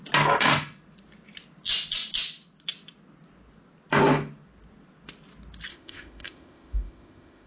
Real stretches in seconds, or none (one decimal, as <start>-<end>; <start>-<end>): 0.0-5.7

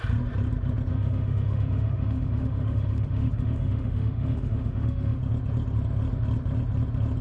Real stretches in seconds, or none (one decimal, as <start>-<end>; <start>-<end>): 0.0-0.9; 5.2-7.2

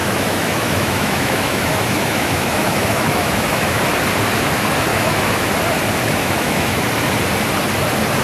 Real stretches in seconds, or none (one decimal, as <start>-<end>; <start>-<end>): 3.8-4.9; 5.5-6.2; 6.8-8.2

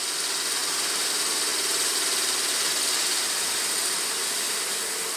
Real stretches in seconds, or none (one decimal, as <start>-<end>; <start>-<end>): 0.0-5.2

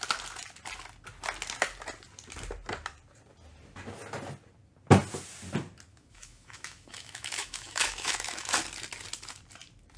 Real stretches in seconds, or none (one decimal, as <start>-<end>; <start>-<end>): 0.0-5.9; 8.5-10.0

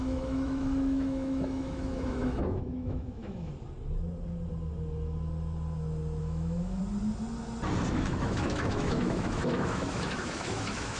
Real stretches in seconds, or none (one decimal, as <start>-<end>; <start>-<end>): 3.5-6.2; 6.8-7.9

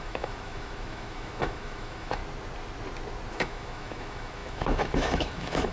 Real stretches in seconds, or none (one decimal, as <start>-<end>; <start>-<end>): 2.2-3.3